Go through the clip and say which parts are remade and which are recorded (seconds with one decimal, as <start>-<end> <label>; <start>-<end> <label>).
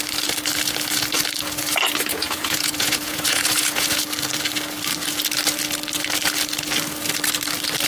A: 0.0-2.1 recorded; 2.1-4.0 remade; 4.0-7.9 recorded